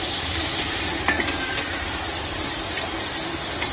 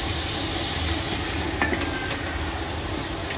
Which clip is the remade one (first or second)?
first